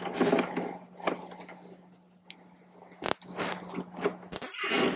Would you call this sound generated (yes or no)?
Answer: no